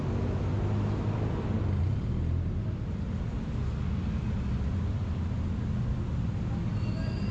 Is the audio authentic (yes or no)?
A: yes